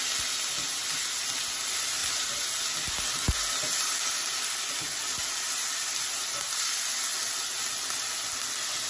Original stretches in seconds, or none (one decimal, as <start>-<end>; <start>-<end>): 0.0-8.9